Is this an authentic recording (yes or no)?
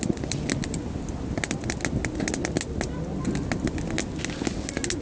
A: yes